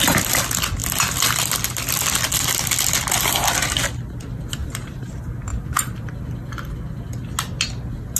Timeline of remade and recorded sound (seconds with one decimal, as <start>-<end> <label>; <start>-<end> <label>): 0.0-4.6 recorded; 4.6-5.1 remade; 5.1-5.5 recorded; 5.5-6.1 remade; 6.1-8.2 recorded